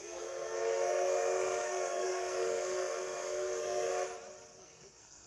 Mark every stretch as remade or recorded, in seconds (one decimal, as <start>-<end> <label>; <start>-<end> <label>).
0.0-3.9 remade; 3.9-4.6 recorded; 4.6-5.3 remade